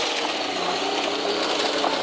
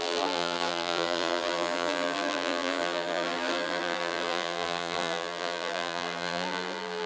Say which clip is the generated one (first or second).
second